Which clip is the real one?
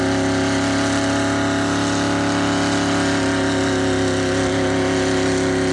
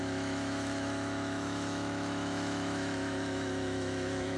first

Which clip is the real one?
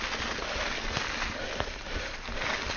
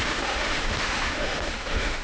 first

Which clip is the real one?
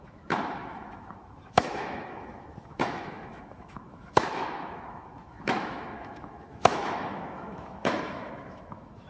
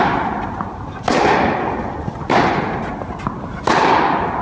second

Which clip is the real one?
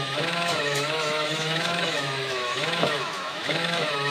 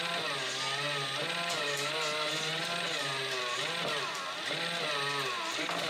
second